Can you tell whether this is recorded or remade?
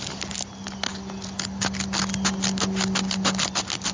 recorded